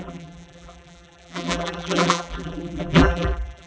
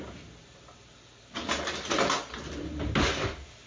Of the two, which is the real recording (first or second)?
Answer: second